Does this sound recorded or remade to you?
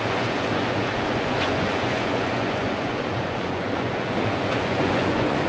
remade